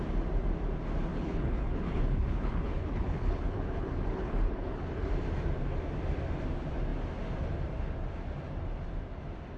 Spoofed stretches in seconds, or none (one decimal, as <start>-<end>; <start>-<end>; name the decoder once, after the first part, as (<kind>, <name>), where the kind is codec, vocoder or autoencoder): 1.1-5.1 (codec, HILCodec)